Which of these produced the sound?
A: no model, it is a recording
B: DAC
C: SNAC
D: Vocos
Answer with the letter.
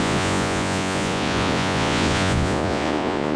D